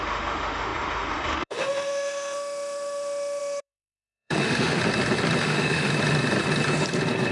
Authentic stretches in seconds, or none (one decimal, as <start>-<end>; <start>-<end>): 4.8-5.4; 5.9-7.3